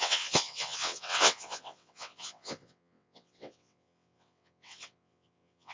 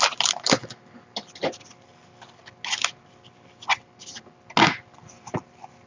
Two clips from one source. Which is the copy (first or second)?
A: first